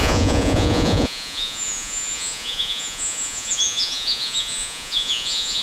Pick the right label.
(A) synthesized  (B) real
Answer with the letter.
A